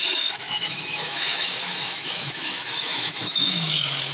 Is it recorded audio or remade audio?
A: remade